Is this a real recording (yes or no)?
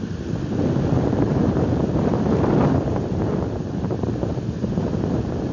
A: no